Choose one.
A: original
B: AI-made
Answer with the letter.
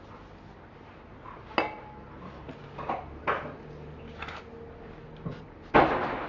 A